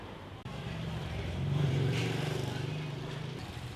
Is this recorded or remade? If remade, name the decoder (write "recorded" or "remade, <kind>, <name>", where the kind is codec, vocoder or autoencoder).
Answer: remade, vocoder, BigVGAN v2